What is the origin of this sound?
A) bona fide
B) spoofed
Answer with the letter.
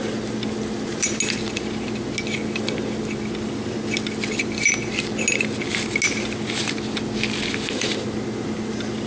A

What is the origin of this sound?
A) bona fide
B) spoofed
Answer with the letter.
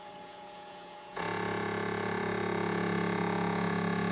B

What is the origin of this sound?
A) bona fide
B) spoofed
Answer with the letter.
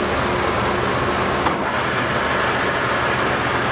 A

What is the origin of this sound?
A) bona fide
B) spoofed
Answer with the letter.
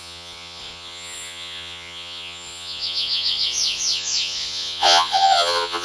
B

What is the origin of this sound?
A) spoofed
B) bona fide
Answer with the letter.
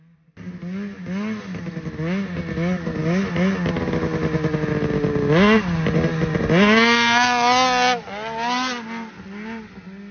B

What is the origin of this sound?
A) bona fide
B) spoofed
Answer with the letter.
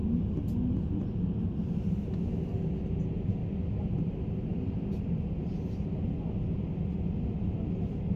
A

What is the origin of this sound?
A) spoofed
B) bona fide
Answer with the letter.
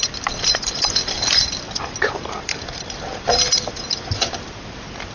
B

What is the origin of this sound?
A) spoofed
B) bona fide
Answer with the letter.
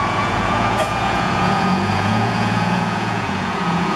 A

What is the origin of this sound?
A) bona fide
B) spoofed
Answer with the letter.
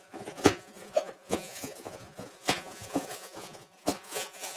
B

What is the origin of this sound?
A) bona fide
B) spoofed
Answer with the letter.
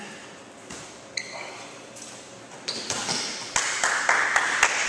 A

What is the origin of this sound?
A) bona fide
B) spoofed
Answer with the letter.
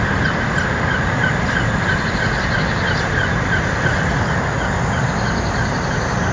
A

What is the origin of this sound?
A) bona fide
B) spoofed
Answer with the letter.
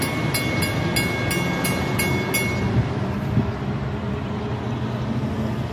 A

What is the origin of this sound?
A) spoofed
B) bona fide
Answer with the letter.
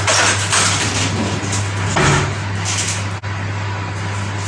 B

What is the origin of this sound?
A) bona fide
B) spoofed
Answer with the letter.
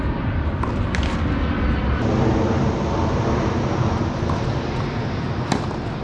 A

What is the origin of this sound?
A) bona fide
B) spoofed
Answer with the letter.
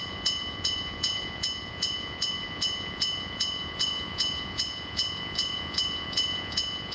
B